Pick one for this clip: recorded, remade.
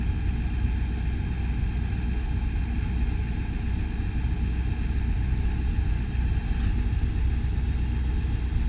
recorded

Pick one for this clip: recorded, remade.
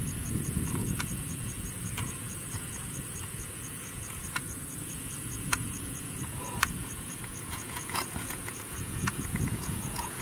remade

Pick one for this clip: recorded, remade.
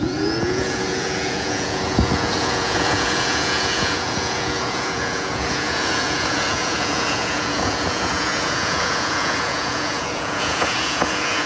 remade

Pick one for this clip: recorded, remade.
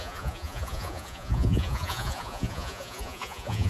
remade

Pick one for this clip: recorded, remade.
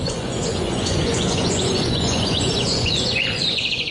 remade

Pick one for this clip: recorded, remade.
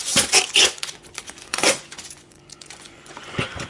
remade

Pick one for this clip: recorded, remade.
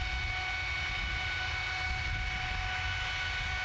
recorded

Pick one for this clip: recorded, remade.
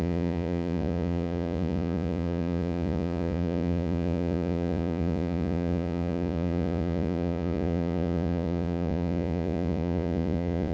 remade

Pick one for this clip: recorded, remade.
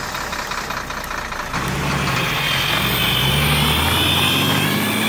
recorded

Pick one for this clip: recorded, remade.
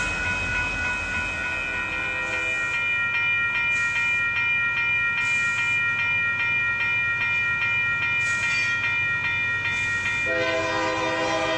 recorded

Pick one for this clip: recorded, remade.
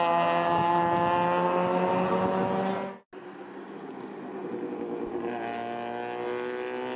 recorded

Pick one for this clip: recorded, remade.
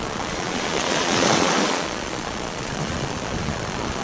remade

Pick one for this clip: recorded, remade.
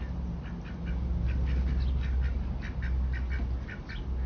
recorded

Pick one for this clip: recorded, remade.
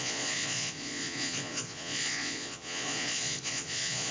remade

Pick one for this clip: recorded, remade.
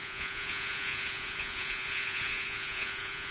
remade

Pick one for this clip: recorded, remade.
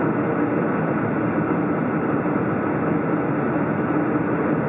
recorded